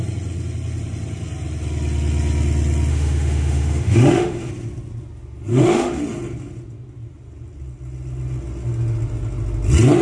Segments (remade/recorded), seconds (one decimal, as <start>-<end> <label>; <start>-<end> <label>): 0.0-2.9 recorded; 2.9-4.5 remade; 4.5-5.5 recorded; 5.5-6.0 remade; 6.0-10.0 recorded

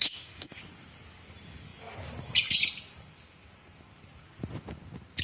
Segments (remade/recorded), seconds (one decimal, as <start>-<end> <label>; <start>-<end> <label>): 0.0-0.6 remade; 0.6-5.2 recorded

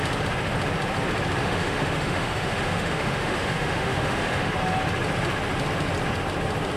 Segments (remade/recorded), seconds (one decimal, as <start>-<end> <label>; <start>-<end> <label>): 0.0-1.4 recorded; 1.4-4.5 remade; 4.5-6.8 recorded

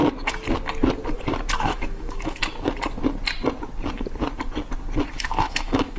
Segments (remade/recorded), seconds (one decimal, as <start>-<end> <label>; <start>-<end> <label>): 0.0-1.5 recorded; 1.5-2.4 remade; 2.4-5.1 recorded; 5.1-6.0 remade